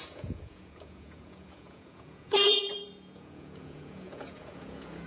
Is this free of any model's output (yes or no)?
no